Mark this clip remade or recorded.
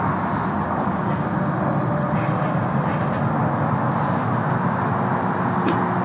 recorded